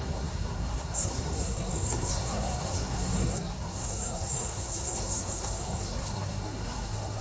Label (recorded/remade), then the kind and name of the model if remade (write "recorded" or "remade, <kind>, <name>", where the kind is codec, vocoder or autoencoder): remade, codec, SNAC